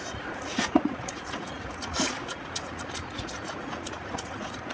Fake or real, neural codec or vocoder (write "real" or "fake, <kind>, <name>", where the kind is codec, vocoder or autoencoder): fake, vocoder, Vocos